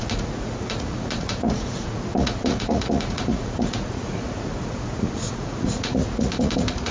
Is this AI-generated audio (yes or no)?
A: yes